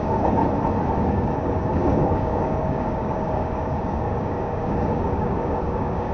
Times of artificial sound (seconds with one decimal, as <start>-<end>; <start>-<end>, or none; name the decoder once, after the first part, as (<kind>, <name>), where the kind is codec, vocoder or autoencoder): 0.0-0.4 (codec, DAC); 0.9-6.1